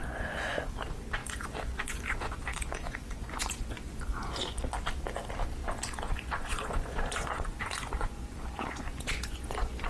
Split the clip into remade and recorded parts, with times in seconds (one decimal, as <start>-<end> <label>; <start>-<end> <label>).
0.0-0.7 remade; 0.7-1.2 recorded; 1.2-4.6 remade; 4.6-5.6 recorded; 5.6-9.9 remade